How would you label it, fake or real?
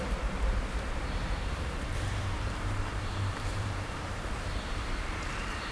fake